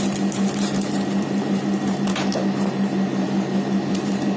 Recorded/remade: remade